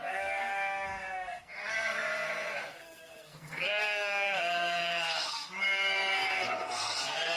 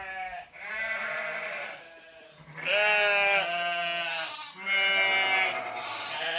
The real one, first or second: second